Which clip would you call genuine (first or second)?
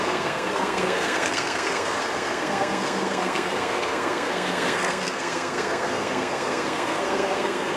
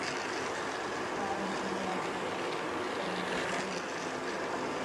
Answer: second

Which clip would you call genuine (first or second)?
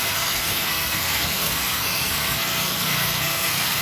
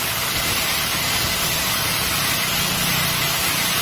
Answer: second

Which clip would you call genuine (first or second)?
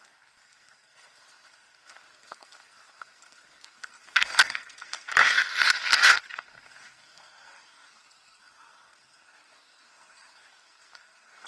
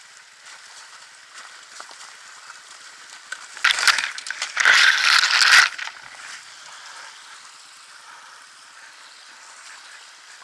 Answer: second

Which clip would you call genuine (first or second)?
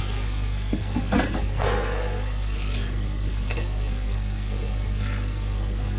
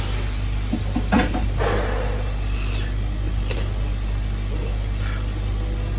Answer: second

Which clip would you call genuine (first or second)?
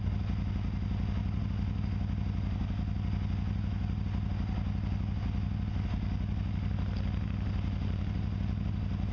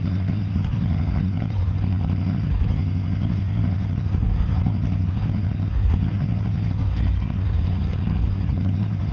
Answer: first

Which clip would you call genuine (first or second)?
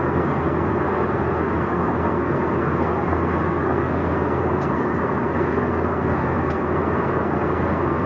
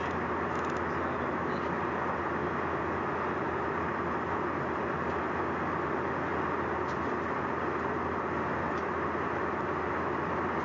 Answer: second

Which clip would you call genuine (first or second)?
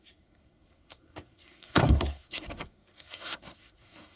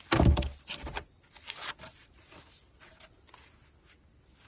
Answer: second